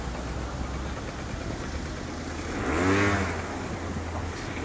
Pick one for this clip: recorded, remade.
recorded